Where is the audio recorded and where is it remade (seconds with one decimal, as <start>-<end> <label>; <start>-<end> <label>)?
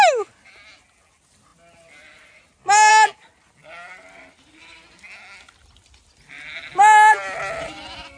0.0-8.2 recorded